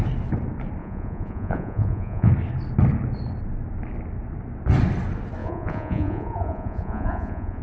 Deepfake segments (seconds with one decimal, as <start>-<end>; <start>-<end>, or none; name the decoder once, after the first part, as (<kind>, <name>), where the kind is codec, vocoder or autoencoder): 0.8-2.3 (vocoder, Vocos); 5.4-7.6